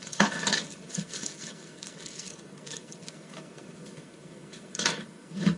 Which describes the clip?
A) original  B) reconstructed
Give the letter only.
B